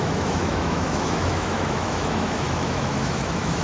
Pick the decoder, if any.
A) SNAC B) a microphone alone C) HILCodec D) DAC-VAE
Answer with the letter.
D